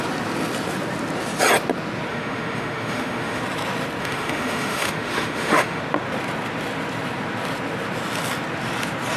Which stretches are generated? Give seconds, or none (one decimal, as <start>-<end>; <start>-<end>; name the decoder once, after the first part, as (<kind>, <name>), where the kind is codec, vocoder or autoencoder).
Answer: 2.1-3.4 (autoencoder, DAC-VAE); 4.0-5.8